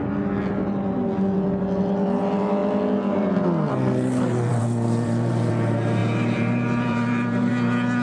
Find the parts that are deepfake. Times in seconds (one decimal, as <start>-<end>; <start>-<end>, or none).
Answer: 4.5-5.5; 6.0-7.5